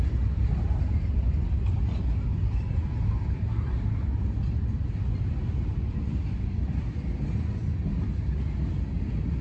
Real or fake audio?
real